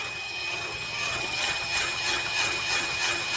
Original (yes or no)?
no